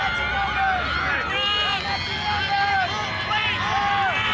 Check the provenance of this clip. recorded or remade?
recorded